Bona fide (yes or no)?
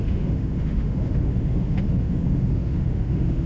no